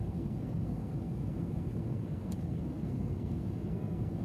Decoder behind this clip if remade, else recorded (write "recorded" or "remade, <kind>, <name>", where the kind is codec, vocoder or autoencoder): remade, codec, SNAC